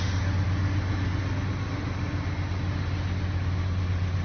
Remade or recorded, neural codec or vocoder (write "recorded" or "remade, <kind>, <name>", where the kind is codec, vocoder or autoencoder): recorded